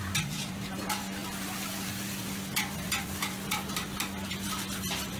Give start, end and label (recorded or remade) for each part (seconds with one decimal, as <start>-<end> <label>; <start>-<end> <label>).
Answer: 0.0-5.2 recorded